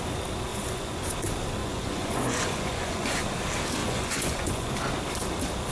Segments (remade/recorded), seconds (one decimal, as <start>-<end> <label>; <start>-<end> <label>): 0.0-0.5 recorded; 0.5-1.0 remade; 1.0-1.6 recorded; 1.6-3.2 remade; 3.2-3.8 recorded; 3.8-4.7 remade; 4.7-5.7 recorded